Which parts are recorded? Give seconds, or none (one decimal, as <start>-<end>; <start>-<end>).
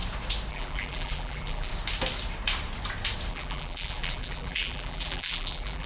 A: 0.0-0.5; 1.7-3.3